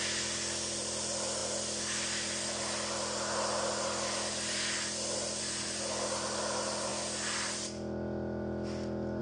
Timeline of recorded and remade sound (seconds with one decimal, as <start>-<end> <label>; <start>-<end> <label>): 0.0-9.2 recorded